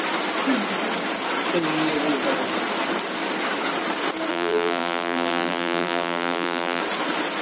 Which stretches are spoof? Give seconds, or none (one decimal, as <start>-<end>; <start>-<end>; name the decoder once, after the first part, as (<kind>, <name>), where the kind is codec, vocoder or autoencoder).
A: 4.3-6.8 (vocoder, BigVGAN v2)